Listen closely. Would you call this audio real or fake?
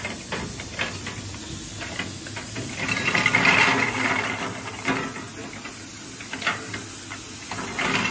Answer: real